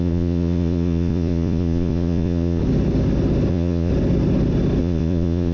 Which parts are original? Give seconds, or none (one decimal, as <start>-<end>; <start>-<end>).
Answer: 2.6-3.5; 3.9-4.8